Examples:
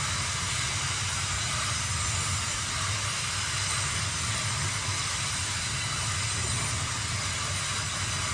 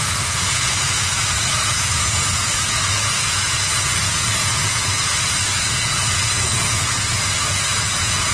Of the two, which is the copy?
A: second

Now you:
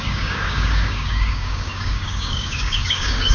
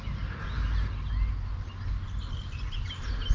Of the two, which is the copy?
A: first